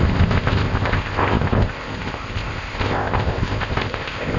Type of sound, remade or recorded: remade